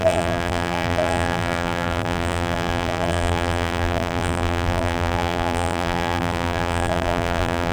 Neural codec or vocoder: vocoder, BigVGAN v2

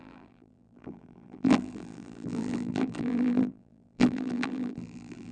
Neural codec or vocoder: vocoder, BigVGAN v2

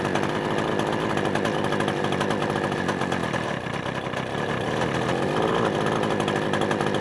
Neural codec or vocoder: none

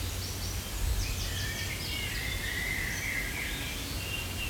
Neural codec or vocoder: none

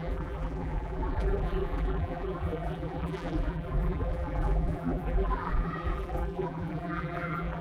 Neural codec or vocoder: vocoder, BigVGAN v2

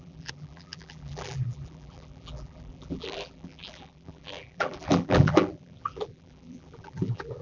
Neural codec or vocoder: vocoder, BigVGAN v2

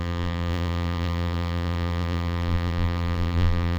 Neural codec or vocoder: vocoder, BigVGAN v2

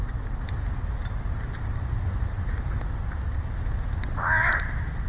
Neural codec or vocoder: none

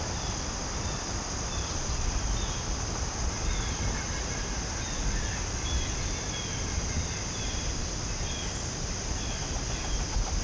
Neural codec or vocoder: vocoder, BigVGAN v2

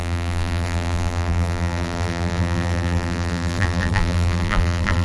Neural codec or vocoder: vocoder, BigVGAN v2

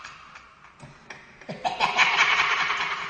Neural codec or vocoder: vocoder, BigVGAN v2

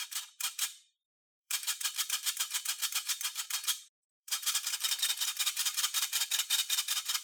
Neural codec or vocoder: vocoder, BigVGAN v2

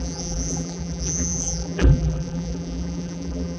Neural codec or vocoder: vocoder, BigVGAN v2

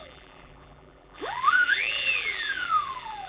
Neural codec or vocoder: vocoder, BigVGAN v2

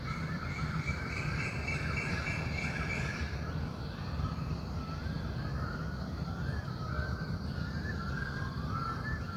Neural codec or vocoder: vocoder, BigVGAN v2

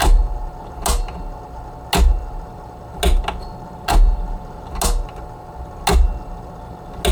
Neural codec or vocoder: none